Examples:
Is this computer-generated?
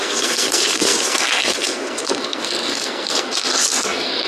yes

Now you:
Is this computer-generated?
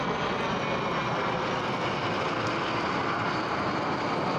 no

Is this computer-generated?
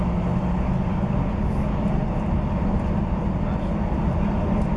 no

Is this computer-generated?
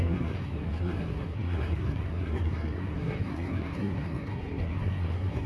yes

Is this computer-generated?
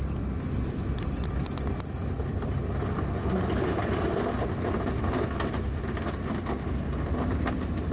no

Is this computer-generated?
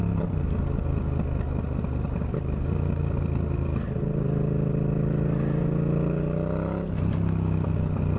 no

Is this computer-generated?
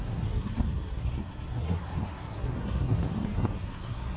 yes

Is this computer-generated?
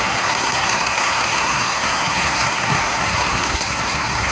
yes